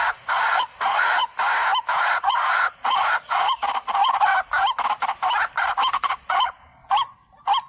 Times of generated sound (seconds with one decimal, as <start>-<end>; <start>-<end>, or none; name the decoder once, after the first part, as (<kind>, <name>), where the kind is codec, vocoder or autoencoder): 0.0-1.2 (vocoder, Vocos); 2.0-4.3; 6.0-6.8